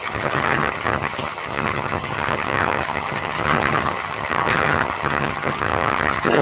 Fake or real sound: fake